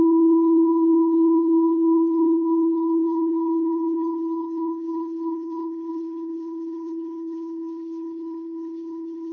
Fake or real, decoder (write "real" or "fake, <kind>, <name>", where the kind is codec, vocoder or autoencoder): fake, codec, HILCodec